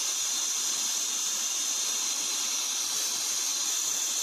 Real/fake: real